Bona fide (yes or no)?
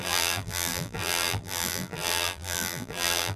no